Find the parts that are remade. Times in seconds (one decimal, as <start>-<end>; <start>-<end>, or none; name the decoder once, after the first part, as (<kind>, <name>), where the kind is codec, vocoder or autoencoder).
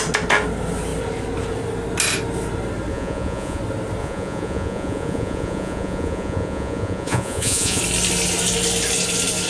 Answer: 2.9-3.6 (vocoder, Vocos); 4.0-7.8